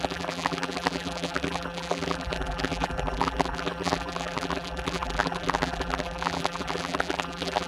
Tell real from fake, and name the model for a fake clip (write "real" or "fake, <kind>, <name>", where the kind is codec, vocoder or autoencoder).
fake, vocoder, BigVGAN v2